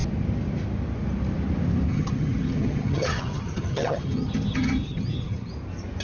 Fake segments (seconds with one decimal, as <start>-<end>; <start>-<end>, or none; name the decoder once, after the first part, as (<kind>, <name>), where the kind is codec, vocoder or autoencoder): 1.9-5.5 (vocoder, HiFi-GAN)